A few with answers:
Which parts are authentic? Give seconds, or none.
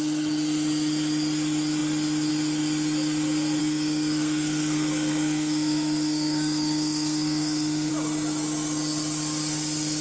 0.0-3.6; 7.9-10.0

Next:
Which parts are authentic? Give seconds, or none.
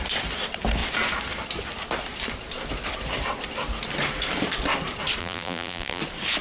0.0-5.2; 6.0-6.4